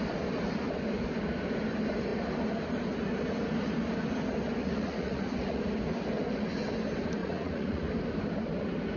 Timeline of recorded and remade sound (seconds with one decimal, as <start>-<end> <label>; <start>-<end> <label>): 0.0-4.6 recorded; 4.6-5.6 remade; 5.6-7.2 recorded; 7.2-7.9 remade; 7.9-9.0 recorded